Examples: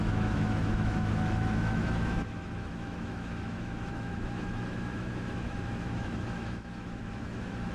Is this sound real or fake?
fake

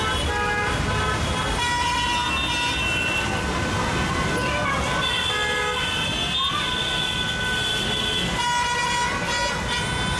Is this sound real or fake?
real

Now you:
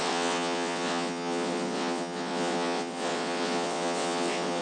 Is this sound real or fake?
fake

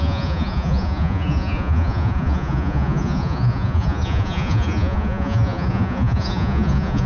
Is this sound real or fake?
fake